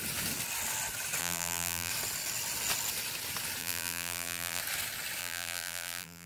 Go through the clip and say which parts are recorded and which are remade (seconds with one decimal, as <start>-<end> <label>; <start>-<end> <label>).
0.0-1.2 recorded; 1.2-1.9 remade; 1.9-3.6 recorded; 3.6-4.6 remade; 4.6-5.2 recorded; 5.2-6.3 remade